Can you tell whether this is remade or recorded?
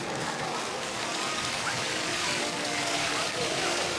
remade